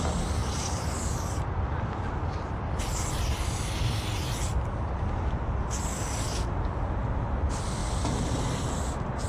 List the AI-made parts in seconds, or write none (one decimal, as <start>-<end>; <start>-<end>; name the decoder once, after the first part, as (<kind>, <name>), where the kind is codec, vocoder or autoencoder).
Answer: none